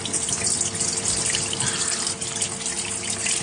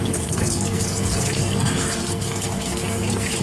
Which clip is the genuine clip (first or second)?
first